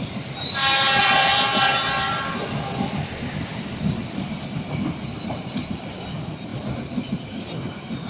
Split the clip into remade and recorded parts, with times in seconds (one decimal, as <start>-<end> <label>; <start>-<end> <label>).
0.0-8.1 recorded